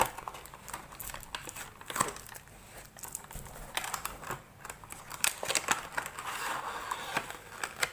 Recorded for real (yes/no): yes